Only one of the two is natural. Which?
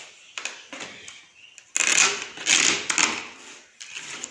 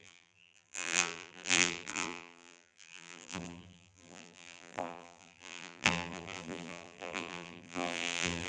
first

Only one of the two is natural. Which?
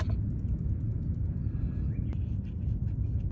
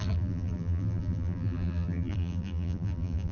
first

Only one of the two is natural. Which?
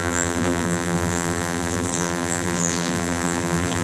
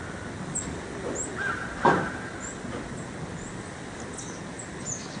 second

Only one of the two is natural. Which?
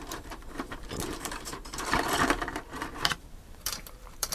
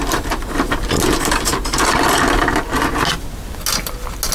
second